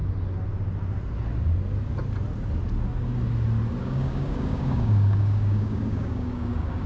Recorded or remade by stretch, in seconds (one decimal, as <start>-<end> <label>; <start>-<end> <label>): 0.0-3.8 recorded; 3.8-6.9 remade